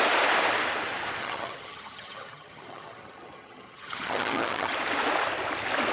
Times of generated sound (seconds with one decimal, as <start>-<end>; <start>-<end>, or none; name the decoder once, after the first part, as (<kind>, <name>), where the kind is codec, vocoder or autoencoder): 1.2-4.7 (vocoder, HiFi-GAN)